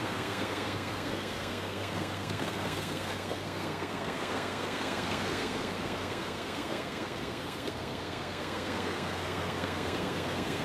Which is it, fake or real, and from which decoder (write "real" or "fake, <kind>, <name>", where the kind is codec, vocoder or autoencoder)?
fake, codec, SNAC